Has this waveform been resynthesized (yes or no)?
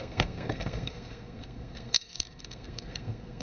yes